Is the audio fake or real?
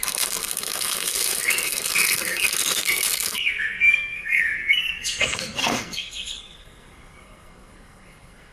fake